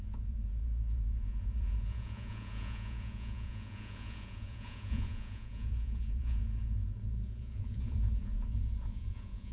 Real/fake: fake